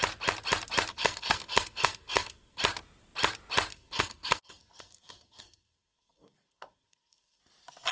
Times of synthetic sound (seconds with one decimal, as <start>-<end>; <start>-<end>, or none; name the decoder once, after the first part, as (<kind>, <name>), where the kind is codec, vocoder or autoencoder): 0.9-2.6 (codec, SNAC); 3.7-7.4